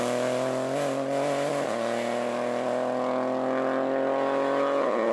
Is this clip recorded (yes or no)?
yes